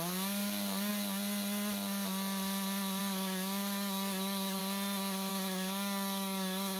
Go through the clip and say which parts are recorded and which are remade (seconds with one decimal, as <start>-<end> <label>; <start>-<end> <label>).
0.0-0.9 remade; 0.9-3.0 recorded; 3.0-4.6 remade; 4.6-5.3 recorded; 5.3-6.8 remade